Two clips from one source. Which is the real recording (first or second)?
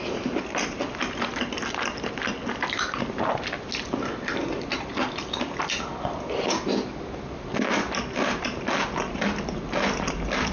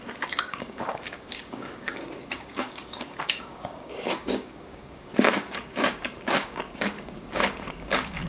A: first